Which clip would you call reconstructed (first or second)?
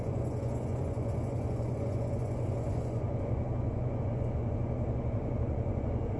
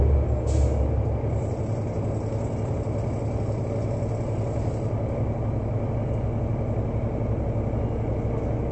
first